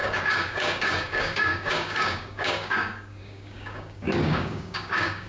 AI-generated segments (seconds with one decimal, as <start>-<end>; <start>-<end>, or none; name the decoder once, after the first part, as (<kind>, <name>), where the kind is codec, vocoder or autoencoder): 0.0-5.3 (codec, DAC)